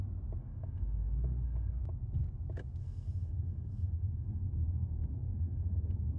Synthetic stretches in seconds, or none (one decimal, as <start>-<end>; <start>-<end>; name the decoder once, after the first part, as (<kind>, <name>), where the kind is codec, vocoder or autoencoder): 0.4-1.8 (codec, SNAC); 2.8-6.2